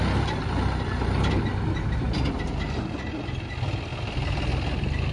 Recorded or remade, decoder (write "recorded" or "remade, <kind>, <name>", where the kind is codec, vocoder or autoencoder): recorded